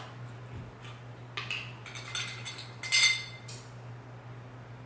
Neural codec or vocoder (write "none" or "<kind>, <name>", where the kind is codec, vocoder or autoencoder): none